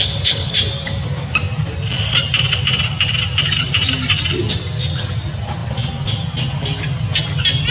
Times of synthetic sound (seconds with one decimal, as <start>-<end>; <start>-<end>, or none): 0.0-0.5

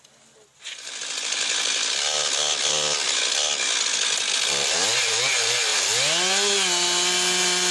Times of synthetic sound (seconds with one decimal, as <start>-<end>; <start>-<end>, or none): none

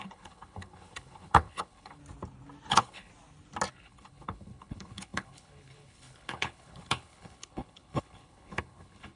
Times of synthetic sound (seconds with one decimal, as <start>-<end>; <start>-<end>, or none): 0.0-2.0; 2.7-3.1; 3.7-9.2

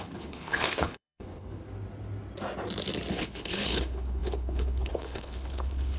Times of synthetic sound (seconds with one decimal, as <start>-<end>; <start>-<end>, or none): 0.0-1.6; 3.1-6.0

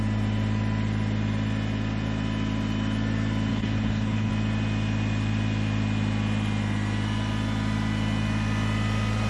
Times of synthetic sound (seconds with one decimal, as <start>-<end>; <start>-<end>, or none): 3.5-4.3

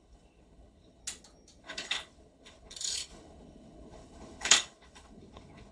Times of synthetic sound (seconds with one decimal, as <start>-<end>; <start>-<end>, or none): 0.0-1.0; 1.6-5.7

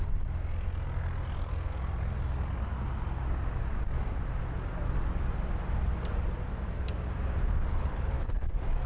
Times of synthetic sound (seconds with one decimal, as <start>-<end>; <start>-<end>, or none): 7.7-8.5

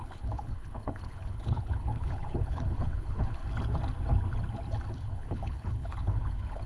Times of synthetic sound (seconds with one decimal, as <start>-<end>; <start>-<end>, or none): 0.0-3.4; 4.9-6.7